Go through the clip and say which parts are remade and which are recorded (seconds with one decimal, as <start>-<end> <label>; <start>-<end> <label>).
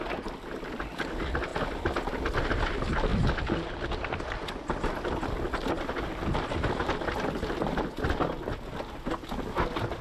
0.0-10.0 recorded